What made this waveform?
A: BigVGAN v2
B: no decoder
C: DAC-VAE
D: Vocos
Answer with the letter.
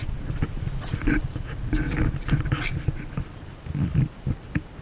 B